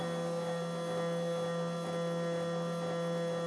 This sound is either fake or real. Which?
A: real